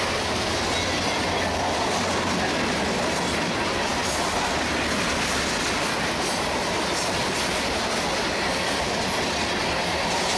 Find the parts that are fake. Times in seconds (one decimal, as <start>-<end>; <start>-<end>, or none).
none